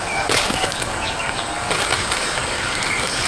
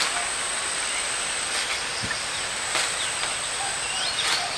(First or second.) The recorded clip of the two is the second